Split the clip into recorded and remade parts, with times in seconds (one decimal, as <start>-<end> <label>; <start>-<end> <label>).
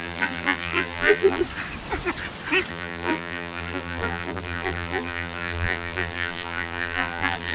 0.0-1.4 remade; 1.4-2.7 recorded; 2.7-7.5 remade